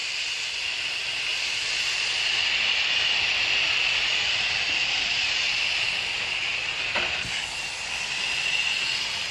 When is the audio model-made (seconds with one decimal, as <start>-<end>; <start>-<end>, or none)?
0.0-0.6; 1.3-5.5